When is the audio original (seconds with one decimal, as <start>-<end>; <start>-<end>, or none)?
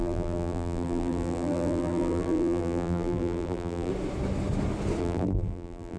3.9-5.0